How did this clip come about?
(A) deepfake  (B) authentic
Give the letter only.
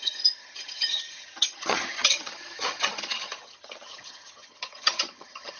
A